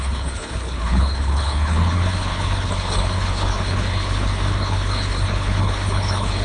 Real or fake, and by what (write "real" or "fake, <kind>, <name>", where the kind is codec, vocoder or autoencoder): fake, codec, HILCodec